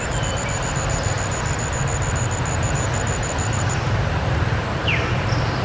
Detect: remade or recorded remade